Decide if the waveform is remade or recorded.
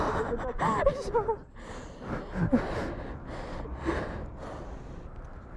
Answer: recorded